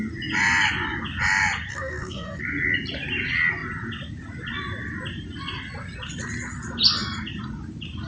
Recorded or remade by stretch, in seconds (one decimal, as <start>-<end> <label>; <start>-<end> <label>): 0.0-1.7 recorded; 1.7-2.4 remade; 2.4-8.1 recorded